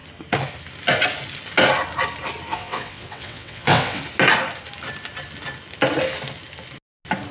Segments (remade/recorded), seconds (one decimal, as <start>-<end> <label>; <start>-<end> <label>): 0.0-2.5 recorded; 2.5-4.0 remade; 4.0-7.3 recorded